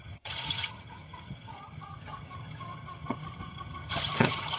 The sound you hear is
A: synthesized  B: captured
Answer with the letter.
A